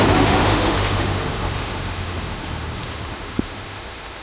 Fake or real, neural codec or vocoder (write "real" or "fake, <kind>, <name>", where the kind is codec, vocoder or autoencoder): fake, autoencoder, DAC-VAE